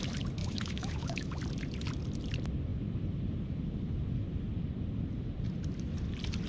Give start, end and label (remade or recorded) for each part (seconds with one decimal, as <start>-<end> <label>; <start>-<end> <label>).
0.0-0.4 recorded; 0.4-1.4 remade; 1.4-6.5 recorded